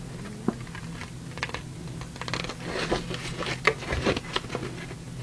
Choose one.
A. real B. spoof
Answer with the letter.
A